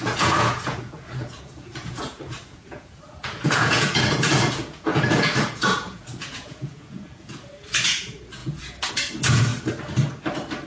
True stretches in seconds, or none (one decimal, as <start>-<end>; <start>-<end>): 9.5-10.7